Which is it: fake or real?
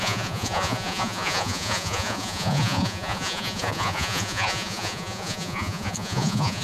fake